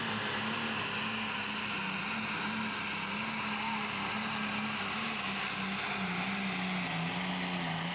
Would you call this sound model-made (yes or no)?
no